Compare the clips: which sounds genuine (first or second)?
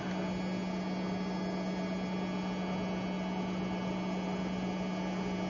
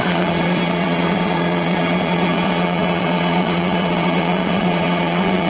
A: first